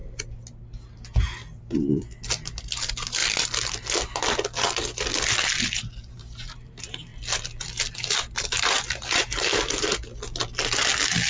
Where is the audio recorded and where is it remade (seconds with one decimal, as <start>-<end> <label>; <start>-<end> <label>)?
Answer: 0.0-2.6 recorded; 2.6-3.2 remade; 3.2-5.8 recorded; 5.8-7.1 remade; 7.1-7.9 recorded; 7.9-10.0 remade; 10.0-11.3 recorded